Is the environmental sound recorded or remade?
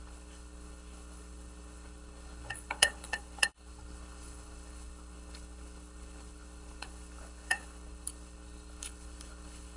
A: remade